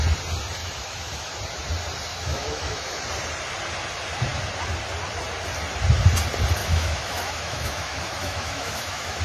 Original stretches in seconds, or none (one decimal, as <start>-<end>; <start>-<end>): 0.0-0.6; 1.4-2.1; 3.0-6.6